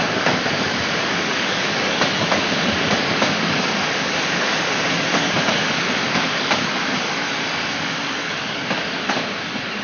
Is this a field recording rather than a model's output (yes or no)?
no